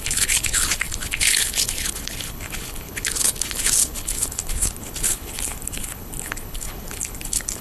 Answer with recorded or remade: remade